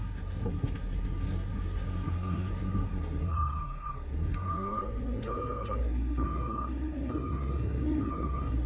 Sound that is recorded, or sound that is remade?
remade